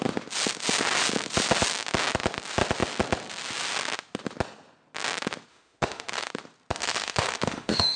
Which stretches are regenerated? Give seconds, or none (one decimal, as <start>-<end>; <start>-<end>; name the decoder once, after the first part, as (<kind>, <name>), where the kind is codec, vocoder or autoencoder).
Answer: 5.5-6.3 (autoencoder, DAC-VAE); 6.8-8.0